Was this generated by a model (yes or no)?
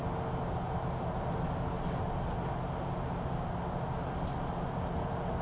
no